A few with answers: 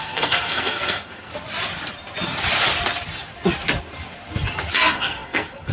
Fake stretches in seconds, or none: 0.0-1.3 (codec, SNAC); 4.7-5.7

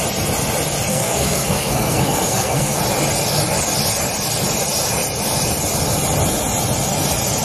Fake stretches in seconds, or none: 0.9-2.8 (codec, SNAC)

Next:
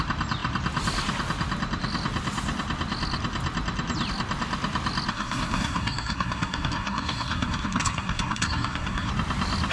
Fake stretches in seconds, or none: 5.1-9.1 (codec, SNAC)